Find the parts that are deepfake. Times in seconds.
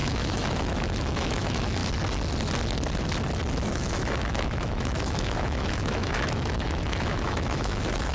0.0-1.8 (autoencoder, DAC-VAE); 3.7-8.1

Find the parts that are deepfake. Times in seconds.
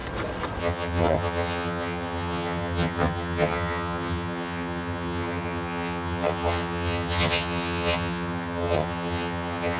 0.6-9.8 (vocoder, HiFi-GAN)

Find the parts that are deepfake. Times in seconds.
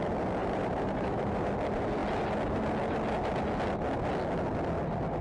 0.4-1.5 (vocoder, BigVGAN v2)